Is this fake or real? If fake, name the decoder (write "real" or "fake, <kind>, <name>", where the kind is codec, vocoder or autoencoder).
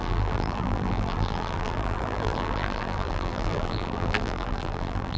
fake, vocoder, BigVGAN v2